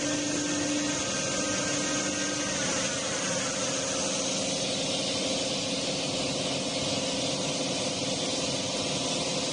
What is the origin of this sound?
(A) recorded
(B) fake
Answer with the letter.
A